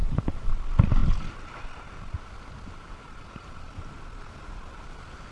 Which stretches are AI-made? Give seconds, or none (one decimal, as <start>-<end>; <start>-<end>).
0.0-0.5